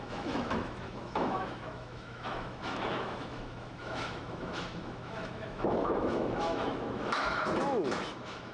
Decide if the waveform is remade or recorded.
remade